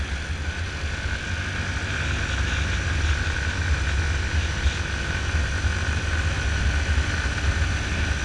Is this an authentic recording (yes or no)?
yes